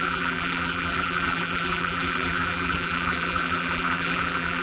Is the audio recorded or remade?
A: remade